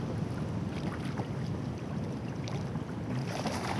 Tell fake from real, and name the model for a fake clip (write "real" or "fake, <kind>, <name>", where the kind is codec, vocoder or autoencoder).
fake, vocoder, BigVGAN v2